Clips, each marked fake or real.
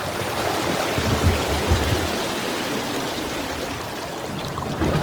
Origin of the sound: fake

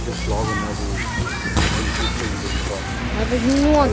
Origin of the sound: real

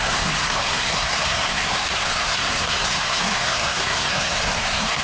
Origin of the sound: fake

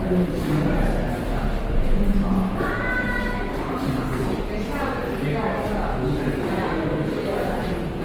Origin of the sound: real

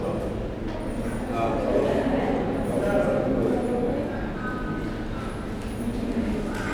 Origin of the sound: real